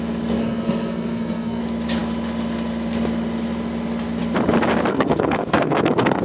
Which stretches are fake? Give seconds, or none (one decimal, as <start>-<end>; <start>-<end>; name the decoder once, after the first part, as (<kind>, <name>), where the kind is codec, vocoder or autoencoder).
0.4-1.6 (codec, SNAC); 4.9-6.2